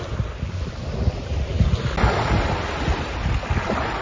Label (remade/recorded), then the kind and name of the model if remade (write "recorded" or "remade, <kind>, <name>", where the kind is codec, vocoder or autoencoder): recorded